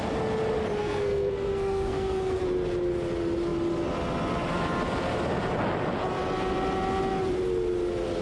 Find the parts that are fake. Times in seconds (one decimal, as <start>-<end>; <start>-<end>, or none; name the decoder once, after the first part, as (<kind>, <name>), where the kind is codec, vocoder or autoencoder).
0.8-2.4 (codec, SNAC)